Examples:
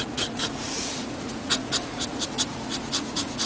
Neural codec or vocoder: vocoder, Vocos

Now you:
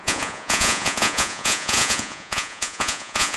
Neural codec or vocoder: vocoder, Vocos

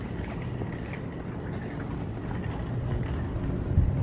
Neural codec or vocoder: none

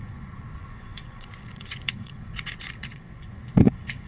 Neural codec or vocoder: vocoder, Vocos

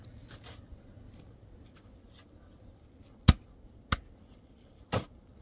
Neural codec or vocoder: none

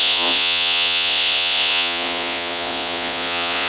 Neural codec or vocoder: vocoder, Vocos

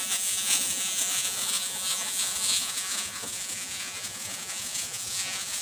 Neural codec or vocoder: vocoder, Vocos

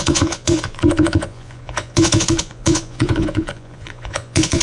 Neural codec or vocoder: vocoder, Vocos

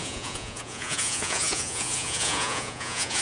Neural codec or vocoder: vocoder, Vocos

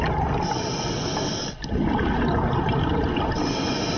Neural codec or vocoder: none